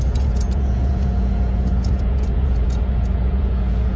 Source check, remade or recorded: remade